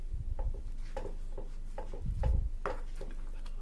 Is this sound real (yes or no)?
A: yes